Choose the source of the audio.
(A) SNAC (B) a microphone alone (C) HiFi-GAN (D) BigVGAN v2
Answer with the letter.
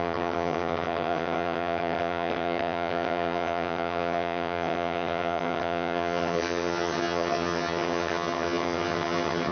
C